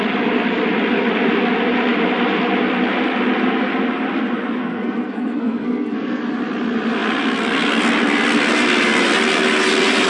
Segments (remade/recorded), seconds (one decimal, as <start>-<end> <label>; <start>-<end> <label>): 0.0-4.6 recorded; 4.6-6.2 remade; 6.2-10.1 recorded